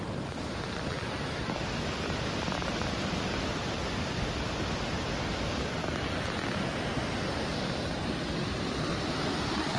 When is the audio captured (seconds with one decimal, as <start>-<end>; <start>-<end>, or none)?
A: 0.0-9.8